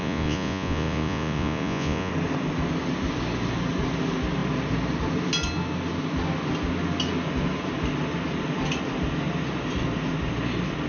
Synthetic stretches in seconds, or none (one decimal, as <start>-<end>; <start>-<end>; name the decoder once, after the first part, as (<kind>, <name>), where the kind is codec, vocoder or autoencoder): 0.0-2.1 (vocoder, Vocos)